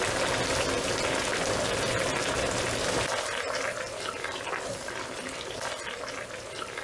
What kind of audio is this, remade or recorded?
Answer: remade